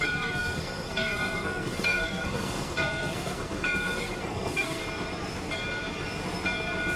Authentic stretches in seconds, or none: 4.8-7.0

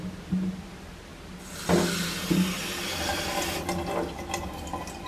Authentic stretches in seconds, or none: 0.0-5.1

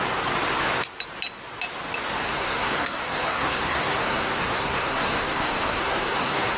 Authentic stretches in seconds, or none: 0.0-2.2

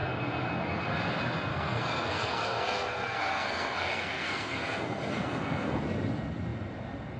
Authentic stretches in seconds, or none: 0.0-1.5; 5.8-7.2

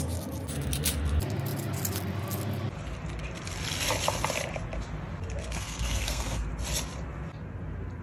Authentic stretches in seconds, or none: 0.0-5.4; 6.5-8.0

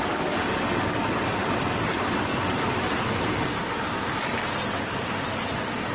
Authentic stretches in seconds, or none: 0.0-5.9

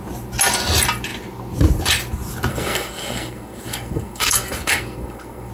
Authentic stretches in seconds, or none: 0.0-2.5